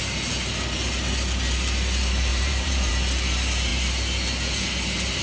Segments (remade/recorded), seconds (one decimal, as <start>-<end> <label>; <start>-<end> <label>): 0.0-2.3 recorded; 2.3-2.9 remade; 2.9-5.2 recorded